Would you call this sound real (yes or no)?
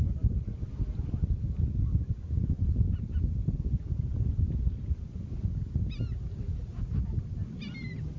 yes